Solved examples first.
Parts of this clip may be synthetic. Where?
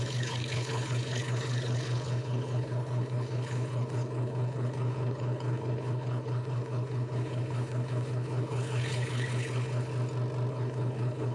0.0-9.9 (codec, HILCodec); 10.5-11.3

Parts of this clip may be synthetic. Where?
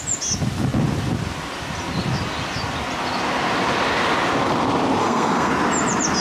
5.0-5.5 (codec, SNAC)